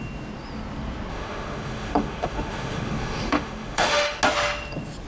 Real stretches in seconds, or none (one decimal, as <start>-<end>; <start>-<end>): 0.0-1.1; 4.2-5.1